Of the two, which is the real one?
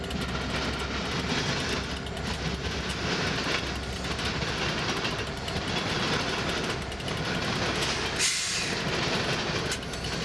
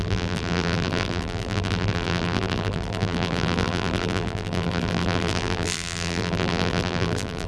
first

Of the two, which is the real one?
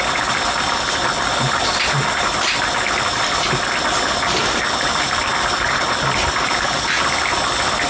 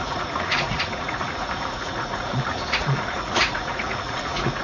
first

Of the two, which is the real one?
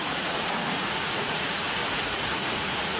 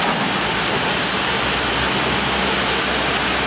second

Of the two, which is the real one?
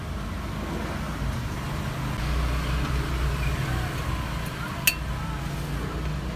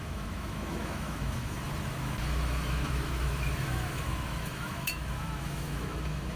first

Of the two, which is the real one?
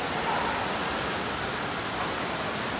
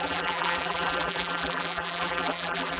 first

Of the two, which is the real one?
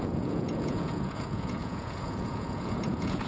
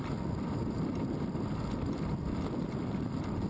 second